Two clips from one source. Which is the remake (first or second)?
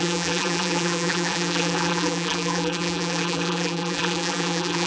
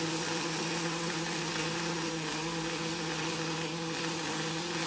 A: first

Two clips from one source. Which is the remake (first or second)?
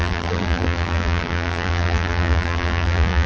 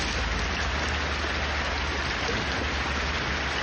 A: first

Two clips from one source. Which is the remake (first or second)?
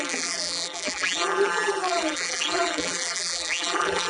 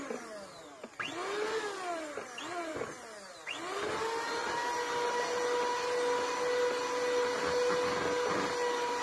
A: first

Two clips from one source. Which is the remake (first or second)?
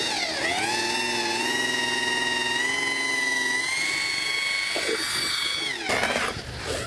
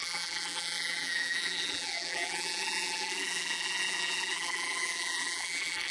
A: second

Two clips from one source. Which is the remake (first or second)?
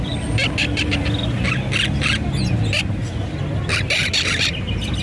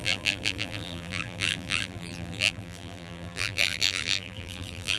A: second